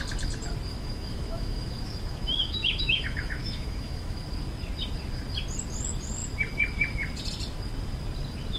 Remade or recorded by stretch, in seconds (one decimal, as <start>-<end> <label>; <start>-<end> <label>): 0.0-0.7 recorded; 0.7-4.2 remade; 4.2-8.6 recorded